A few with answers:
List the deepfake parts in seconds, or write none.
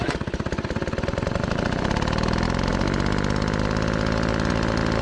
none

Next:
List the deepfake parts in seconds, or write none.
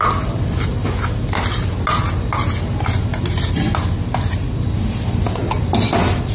none